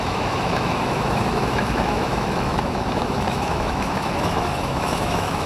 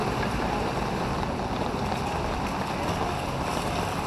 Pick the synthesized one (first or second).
first